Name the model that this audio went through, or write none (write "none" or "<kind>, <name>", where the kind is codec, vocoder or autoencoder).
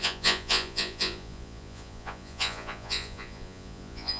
vocoder, Vocos